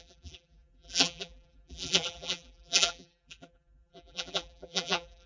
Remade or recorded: remade